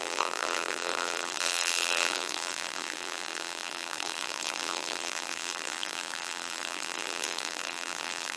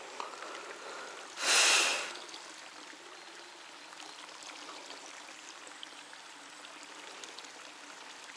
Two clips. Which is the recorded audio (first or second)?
second